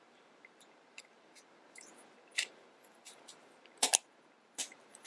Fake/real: fake